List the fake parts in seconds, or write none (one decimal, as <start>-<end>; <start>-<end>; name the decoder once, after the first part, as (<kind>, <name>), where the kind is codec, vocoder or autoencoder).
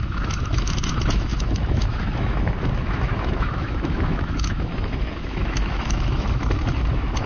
0.0-7.3 (autoencoder, DAC-VAE)